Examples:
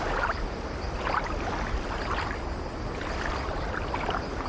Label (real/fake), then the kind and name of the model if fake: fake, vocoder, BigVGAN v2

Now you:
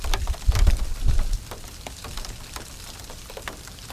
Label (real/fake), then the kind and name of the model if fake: fake, vocoder, BigVGAN v2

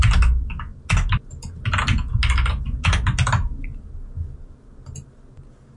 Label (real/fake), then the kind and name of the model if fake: real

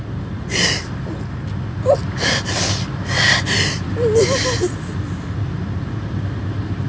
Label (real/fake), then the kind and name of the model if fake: fake, vocoder, BigVGAN v2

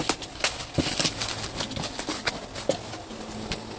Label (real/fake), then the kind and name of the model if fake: real